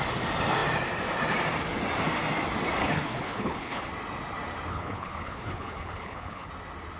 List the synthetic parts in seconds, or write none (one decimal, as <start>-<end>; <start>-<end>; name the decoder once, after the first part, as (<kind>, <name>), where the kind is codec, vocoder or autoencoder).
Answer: 2.8-3.9 (codec, HILCodec); 4.7-6.5